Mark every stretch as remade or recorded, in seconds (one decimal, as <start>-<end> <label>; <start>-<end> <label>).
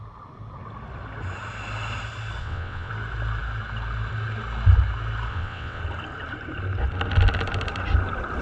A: 0.0-2.4 recorded; 2.4-2.9 remade; 2.9-5.3 recorded; 5.3-5.8 remade; 5.8-8.4 recorded